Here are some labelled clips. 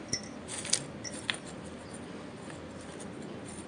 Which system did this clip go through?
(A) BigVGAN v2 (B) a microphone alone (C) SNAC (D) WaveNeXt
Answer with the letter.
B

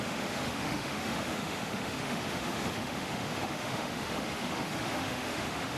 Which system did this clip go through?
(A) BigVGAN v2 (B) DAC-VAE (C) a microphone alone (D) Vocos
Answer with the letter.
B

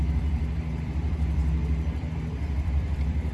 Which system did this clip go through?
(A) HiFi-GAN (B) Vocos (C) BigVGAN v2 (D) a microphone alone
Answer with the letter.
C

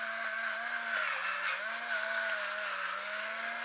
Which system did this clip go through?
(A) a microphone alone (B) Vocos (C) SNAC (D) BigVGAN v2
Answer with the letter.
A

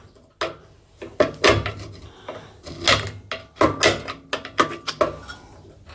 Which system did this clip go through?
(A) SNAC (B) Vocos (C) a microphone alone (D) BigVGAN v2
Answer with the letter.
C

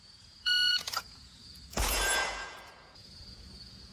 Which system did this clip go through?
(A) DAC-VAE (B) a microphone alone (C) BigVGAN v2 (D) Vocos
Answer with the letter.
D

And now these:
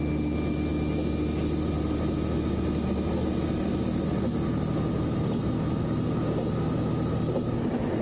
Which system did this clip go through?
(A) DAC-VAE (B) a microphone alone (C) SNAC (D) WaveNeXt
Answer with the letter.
B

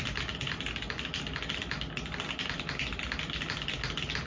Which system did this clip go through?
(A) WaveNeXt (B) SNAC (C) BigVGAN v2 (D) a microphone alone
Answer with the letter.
D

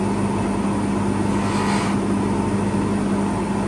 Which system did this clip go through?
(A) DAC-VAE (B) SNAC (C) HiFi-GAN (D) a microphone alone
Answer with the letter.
D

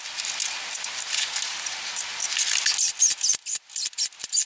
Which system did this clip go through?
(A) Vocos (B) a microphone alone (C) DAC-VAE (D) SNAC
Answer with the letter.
B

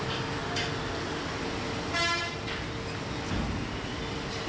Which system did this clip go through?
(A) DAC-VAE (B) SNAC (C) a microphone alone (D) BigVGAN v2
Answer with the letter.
C